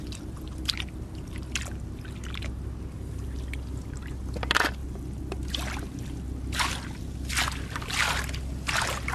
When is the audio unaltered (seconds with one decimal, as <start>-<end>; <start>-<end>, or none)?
0.0-9.1